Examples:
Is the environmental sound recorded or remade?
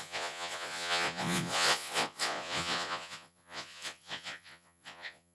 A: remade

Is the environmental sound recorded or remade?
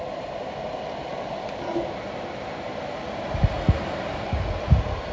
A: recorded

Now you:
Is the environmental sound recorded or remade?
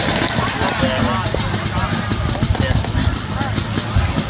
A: recorded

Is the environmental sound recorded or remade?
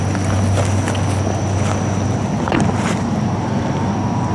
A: recorded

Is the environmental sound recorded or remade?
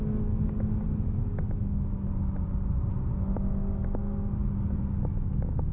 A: recorded